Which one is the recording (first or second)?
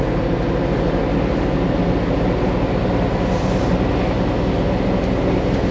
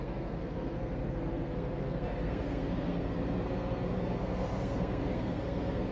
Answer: first